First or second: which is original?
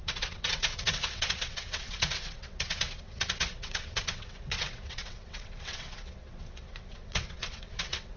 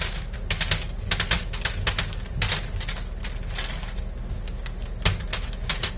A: second